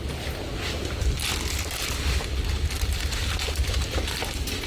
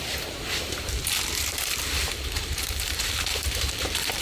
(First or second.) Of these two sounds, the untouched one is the first